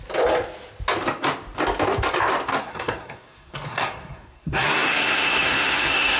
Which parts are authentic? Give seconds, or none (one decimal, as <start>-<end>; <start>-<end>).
0.0-2.6